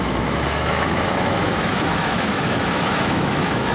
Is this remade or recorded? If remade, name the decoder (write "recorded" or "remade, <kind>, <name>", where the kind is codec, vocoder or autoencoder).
remade, autoencoder, DAC-VAE